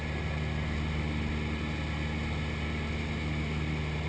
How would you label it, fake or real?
real